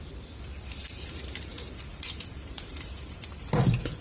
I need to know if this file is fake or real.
fake